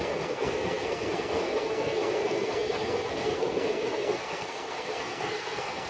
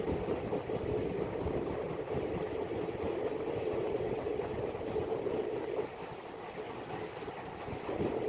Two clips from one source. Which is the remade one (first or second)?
first